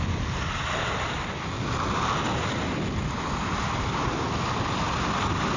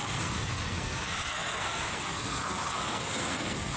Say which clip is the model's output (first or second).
second